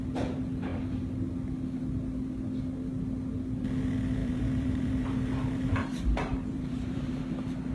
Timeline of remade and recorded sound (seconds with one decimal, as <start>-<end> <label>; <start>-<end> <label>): 0.0-4.2 recorded; 4.2-7.2 remade; 7.2-7.7 recorded